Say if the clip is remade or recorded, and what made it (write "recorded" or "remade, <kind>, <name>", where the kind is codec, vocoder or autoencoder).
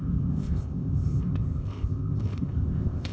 remade, codec, ZipCodec